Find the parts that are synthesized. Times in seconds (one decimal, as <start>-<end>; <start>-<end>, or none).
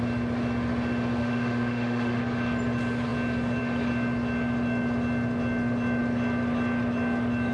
1.2-2.2